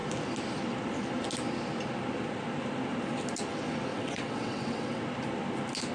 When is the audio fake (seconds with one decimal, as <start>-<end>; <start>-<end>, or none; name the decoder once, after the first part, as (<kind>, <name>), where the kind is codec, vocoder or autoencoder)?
3.9-5.0 (vocoder, WaveNeXt)